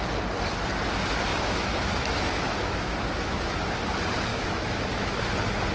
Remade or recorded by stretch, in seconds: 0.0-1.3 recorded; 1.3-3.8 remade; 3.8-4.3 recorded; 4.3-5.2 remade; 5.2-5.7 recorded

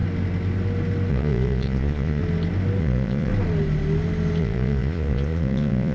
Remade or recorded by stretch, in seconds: 0.0-1.1 recorded; 1.1-2.2 remade; 2.2-2.8 recorded; 2.8-3.3 remade; 3.3-4.4 recorded; 4.4-5.9 remade

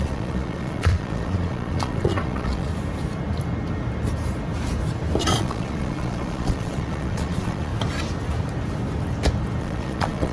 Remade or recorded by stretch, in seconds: 0.0-2.7 remade; 2.7-5.2 recorded; 5.2-7.7 remade; 7.7-9.6 recorded; 9.6-10.3 remade